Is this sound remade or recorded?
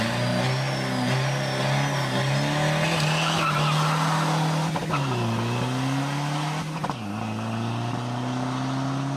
recorded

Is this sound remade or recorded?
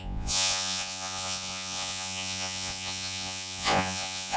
remade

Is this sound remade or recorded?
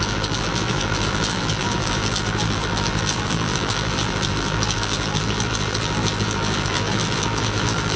remade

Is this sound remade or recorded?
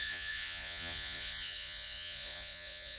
remade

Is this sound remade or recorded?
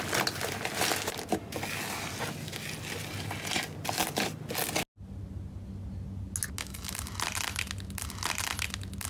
recorded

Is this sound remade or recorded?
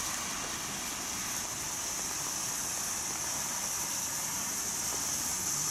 recorded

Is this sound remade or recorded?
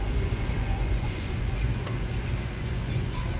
remade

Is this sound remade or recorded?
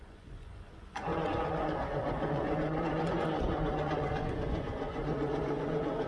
remade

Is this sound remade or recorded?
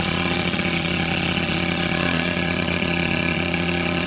remade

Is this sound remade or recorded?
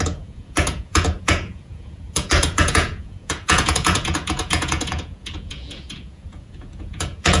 remade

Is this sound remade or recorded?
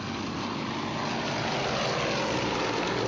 recorded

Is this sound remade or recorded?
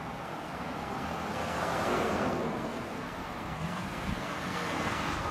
remade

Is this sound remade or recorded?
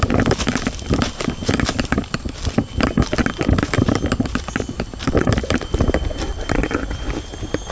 recorded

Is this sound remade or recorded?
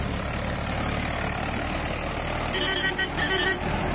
recorded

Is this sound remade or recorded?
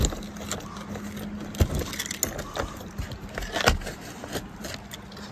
recorded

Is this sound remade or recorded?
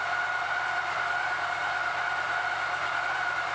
recorded